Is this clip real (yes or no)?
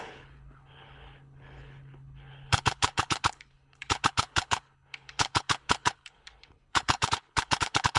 no